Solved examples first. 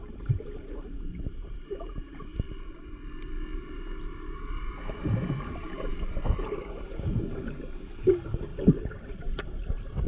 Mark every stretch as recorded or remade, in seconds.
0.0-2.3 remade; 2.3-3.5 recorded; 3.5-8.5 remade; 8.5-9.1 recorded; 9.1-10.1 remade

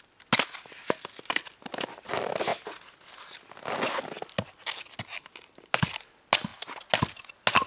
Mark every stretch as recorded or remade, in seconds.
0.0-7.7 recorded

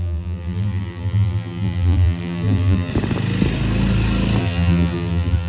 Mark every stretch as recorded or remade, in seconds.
0.0-2.9 remade; 2.9-4.4 recorded; 4.4-5.5 remade

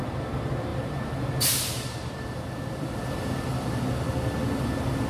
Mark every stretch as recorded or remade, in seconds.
0.0-0.7 recorded; 0.7-3.8 remade; 3.8-5.1 recorded